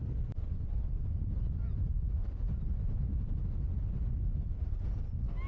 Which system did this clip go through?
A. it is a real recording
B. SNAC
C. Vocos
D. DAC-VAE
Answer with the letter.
A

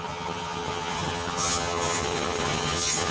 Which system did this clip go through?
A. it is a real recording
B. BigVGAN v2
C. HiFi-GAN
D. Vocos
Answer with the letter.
C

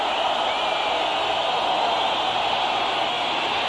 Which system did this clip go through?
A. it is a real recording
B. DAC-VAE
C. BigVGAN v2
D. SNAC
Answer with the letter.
A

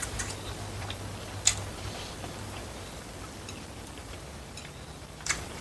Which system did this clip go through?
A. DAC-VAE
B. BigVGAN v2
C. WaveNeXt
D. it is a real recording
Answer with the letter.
B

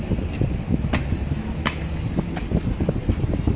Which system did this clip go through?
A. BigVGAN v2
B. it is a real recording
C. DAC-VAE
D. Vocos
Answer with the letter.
B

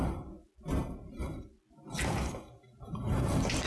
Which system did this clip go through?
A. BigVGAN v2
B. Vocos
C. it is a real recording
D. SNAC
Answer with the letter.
C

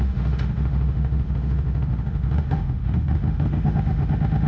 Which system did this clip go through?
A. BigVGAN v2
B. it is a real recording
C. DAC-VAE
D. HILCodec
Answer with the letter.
C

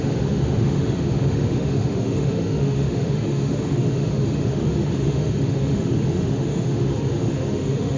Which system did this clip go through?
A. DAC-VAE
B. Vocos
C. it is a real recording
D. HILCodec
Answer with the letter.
A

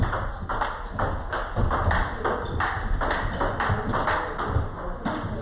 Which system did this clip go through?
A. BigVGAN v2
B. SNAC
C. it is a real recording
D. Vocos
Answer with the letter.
C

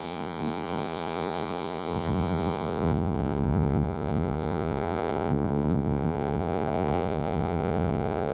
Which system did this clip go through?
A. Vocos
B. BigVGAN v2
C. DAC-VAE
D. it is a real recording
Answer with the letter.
A